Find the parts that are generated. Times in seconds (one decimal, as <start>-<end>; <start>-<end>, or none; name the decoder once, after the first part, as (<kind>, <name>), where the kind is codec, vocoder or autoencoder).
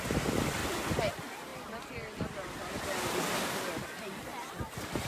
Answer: 0.6-1.1 (vocoder, BigVGAN v2)